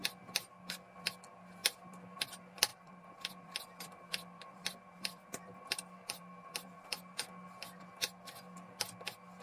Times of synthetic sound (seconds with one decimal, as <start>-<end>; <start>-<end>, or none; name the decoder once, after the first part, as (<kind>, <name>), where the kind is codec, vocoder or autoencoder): 2.7-7.0 (vocoder, BigVGAN v2)